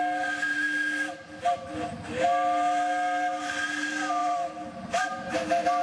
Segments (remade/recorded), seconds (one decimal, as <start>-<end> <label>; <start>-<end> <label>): 0.0-4.2 recorded; 4.2-5.1 remade; 5.1-5.8 recorded